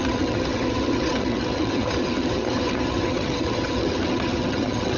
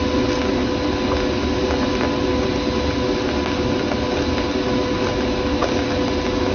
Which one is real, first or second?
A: second